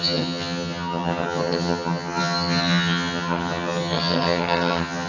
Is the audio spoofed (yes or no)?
yes